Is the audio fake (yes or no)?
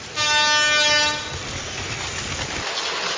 no